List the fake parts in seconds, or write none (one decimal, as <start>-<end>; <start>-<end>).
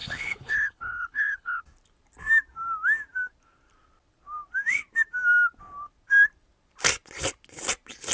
0.0-1.6